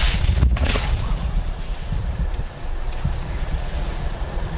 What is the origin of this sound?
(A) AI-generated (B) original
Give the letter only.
A